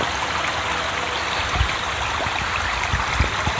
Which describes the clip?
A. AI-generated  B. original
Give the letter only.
B